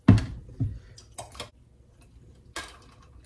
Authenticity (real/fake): real